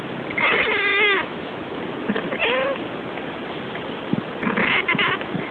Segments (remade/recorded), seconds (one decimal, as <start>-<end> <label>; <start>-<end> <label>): 0.0-0.9 recorded; 0.9-1.8 remade; 1.8-5.5 recorded